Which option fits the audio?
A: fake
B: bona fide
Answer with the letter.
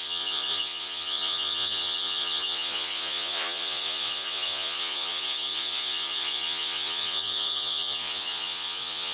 A